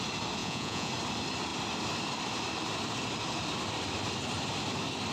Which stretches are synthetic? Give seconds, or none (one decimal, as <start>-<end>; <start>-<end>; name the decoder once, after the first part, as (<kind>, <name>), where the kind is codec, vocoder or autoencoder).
0.4-0.9 (vocoder, Vocos)